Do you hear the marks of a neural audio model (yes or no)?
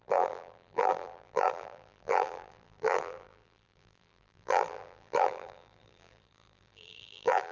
yes